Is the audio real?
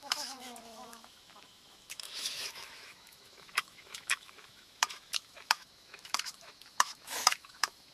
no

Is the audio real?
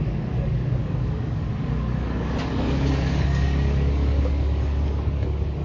no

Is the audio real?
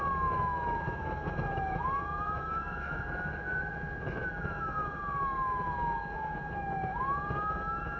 no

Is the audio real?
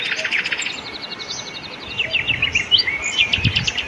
yes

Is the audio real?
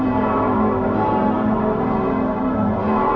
no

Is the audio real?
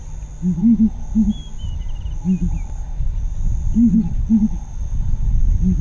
yes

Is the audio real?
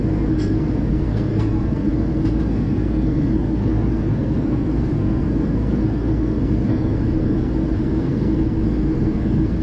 no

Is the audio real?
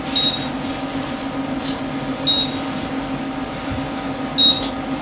yes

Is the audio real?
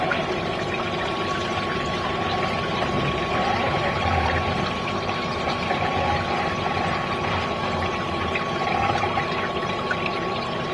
no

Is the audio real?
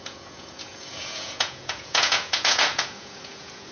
no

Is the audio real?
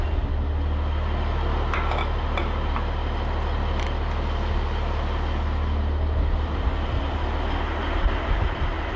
yes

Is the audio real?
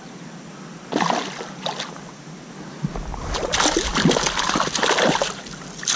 yes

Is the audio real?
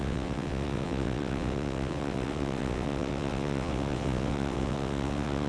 no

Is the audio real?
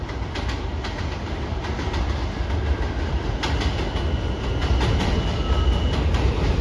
yes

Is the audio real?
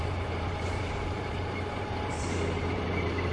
no